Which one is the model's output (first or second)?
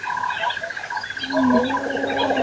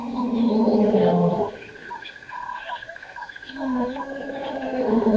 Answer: second